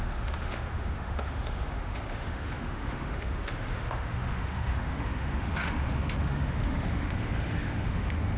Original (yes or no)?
no